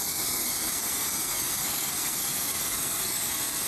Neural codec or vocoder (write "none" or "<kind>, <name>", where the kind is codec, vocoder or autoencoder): codec, SNAC